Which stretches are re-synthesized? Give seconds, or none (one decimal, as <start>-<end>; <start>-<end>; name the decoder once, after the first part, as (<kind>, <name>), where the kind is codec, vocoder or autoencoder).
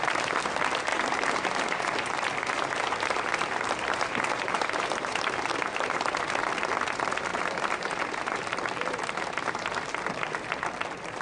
0.9-6.0 (vocoder, BigVGAN v2); 7.3-8.4